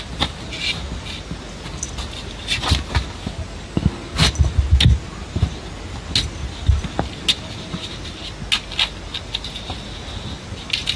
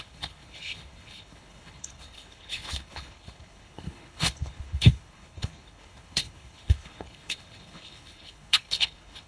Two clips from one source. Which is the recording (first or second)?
first